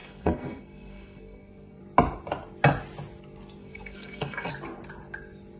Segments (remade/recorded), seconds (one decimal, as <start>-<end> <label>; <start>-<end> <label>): 0.0-1.8 remade; 1.8-3.6 recorded; 3.6-4.5 remade; 4.5-5.6 recorded